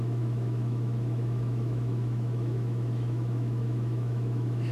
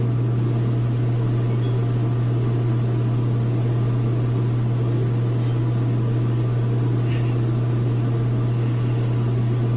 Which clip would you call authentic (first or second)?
second